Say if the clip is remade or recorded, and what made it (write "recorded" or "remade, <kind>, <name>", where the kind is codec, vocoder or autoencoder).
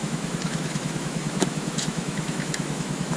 remade, autoencoder, DAC-VAE